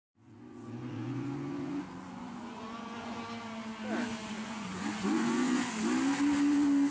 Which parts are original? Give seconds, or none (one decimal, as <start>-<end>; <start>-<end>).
3.2-4.2; 5.7-6.9